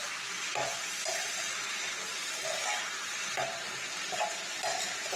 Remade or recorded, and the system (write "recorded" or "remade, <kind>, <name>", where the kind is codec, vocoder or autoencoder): recorded